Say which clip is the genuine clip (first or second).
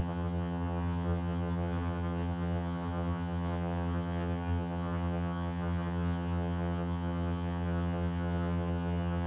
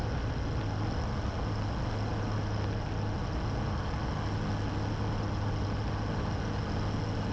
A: second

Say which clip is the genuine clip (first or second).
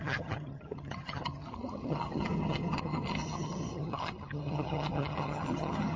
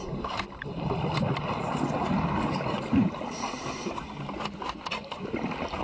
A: second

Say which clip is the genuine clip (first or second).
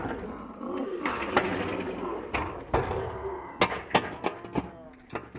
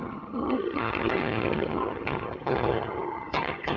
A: first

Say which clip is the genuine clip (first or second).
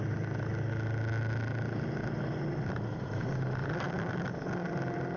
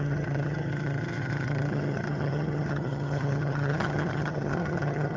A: first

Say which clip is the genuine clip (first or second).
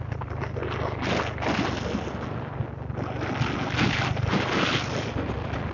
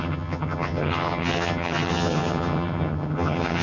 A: first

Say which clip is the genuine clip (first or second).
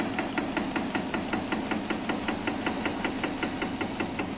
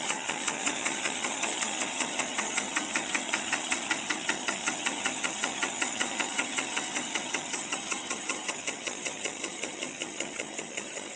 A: first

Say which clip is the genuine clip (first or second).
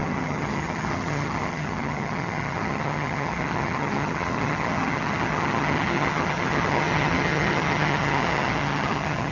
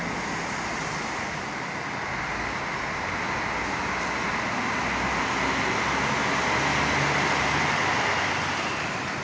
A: second